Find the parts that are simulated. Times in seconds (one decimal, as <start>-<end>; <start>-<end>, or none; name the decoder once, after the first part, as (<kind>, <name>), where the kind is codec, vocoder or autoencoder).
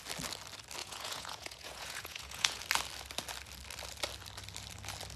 0.8-2.6 (vocoder, Vocos)